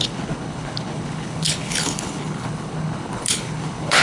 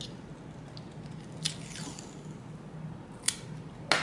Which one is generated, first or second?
first